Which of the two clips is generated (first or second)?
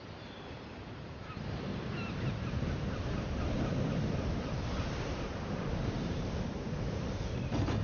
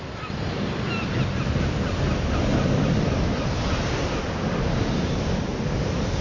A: first